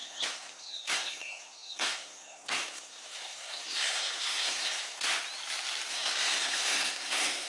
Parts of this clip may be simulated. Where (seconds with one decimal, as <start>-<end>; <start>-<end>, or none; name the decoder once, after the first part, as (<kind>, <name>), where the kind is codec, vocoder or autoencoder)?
0.0-5.1 (codec, SNAC); 5.9-7.5